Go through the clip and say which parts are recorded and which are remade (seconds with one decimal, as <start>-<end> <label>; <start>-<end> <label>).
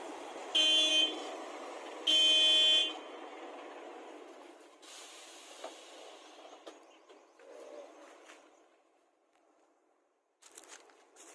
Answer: 0.0-11.3 recorded